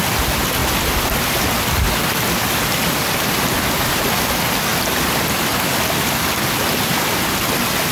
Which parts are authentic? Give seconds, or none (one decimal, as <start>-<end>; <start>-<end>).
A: 0.0-7.9

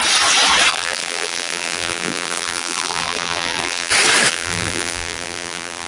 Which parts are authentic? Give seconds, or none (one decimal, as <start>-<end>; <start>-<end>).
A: 0.0-0.7; 3.9-4.3

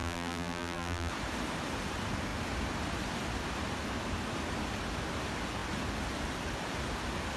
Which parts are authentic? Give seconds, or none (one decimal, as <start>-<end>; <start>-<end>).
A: 1.1-7.4

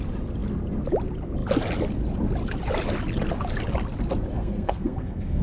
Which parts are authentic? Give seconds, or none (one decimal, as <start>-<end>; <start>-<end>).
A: 0.0-4.3

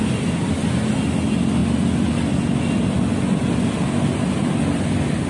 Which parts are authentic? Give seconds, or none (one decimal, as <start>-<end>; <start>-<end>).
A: 0.0-5.3

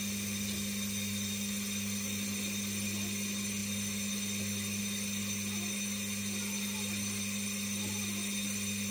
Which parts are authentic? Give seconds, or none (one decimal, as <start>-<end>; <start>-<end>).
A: 0.0-8.9

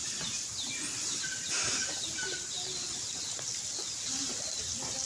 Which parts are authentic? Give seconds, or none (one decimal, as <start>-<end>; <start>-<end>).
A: 0.0-5.1

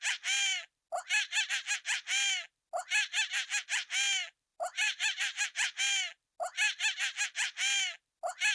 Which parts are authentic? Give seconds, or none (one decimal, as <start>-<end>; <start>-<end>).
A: 0.0-4.5; 5.8-8.5